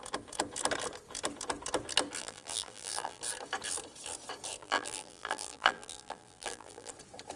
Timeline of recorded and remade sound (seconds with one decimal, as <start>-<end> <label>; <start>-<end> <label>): 0.0-2.2 recorded; 2.2-3.2 remade; 3.2-4.6 recorded; 4.6-6.9 remade; 6.9-7.4 recorded